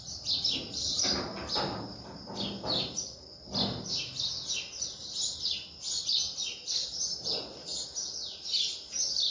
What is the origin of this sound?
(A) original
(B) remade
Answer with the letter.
A